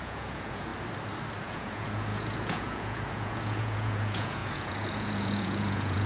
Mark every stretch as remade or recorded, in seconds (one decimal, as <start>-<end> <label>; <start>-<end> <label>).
0.0-0.7 remade; 0.7-1.4 recorded; 1.4-6.1 remade